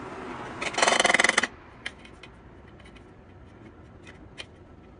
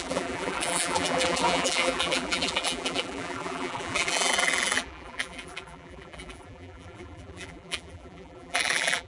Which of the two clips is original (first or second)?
first